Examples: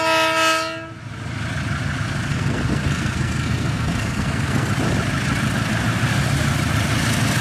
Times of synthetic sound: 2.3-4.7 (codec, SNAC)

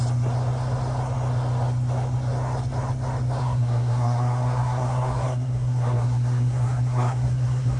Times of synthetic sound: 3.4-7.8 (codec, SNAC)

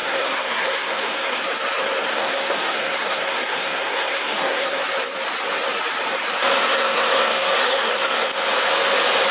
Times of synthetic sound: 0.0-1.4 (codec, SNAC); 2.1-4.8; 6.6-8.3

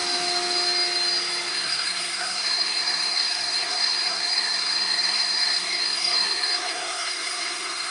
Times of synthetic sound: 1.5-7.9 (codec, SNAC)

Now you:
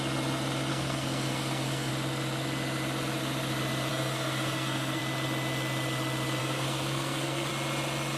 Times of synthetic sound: 0.7-1.9 (codec, SNAC); 3.9-5.0; 6.4-7.5

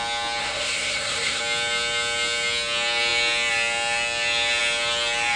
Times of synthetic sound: 0.4-1.4 (codec, SNAC)

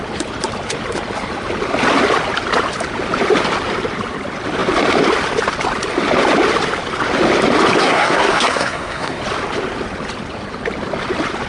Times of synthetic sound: 7.8-9.2 (codec, SNAC)